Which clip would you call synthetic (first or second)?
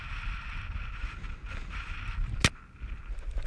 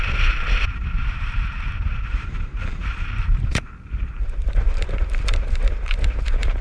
second